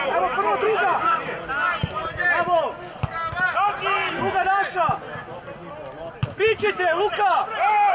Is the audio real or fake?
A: real